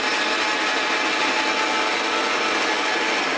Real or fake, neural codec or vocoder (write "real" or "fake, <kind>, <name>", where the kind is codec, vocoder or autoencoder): real